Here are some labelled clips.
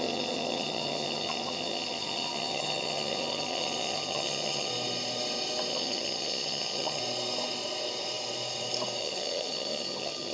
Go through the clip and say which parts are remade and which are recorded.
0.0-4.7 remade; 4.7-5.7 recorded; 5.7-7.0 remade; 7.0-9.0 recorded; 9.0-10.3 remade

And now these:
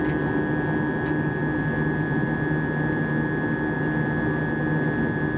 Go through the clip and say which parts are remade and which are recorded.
0.0-5.4 recorded

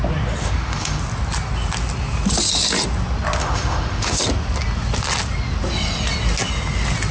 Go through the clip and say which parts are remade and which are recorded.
0.0-0.4 recorded; 0.4-1.0 remade; 1.0-3.4 recorded; 3.4-4.2 remade; 4.2-7.1 recorded

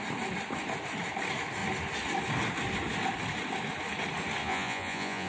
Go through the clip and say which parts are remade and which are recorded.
0.0-4.4 recorded; 4.4-5.3 remade

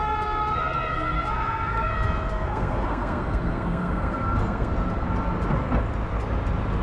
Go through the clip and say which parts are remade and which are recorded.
0.0-1.9 remade; 1.9-2.3 recorded; 2.3-4.7 remade; 4.7-6.8 recorded

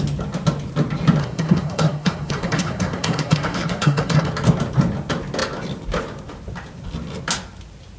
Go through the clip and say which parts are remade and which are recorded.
0.0-1.2 recorded; 1.2-4.3 remade; 4.3-8.0 recorded